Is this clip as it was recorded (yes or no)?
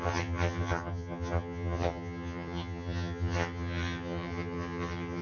no